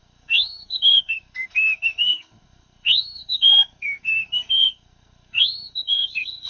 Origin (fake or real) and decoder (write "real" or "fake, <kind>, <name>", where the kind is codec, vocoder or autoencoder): fake, codec, SNAC